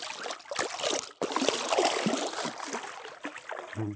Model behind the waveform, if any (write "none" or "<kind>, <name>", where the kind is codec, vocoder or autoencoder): none